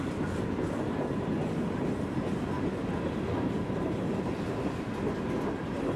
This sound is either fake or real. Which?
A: real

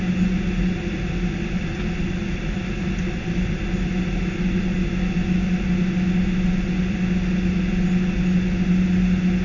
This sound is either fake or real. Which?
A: real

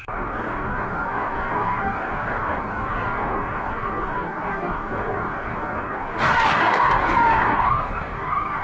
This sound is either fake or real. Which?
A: fake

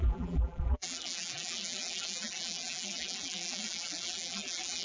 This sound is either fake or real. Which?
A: fake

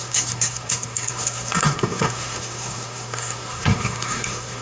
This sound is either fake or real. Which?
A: fake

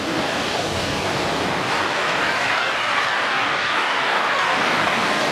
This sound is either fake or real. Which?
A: fake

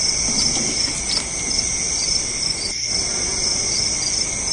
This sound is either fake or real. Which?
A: real